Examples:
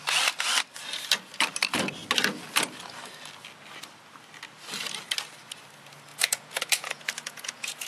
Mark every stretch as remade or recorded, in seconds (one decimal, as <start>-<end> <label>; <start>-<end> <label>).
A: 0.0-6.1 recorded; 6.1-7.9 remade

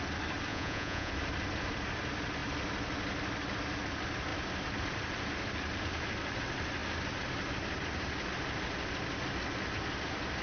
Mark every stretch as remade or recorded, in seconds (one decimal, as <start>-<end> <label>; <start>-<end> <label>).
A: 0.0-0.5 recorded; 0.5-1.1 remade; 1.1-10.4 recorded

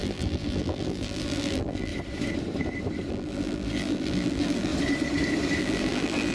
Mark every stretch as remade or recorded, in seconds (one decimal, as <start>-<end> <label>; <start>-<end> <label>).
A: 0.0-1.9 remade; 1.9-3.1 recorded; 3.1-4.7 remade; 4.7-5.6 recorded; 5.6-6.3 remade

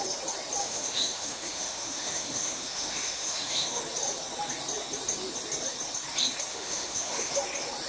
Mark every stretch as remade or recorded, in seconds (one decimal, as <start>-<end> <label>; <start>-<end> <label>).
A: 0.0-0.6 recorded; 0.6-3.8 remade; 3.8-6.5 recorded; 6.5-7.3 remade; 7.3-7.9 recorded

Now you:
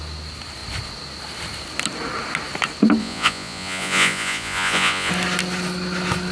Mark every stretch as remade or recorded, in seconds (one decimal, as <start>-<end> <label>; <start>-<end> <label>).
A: 0.0-3.0 recorded; 3.0-5.1 remade; 5.1-6.3 recorded